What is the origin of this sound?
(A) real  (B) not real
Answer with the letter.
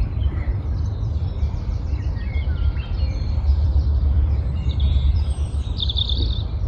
B